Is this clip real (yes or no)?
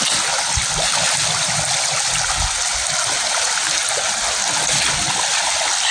yes